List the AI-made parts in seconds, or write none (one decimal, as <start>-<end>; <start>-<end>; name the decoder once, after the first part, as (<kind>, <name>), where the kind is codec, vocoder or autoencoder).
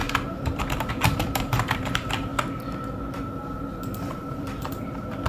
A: 0.0-2.3 (vocoder, BigVGAN v2); 3.2-5.3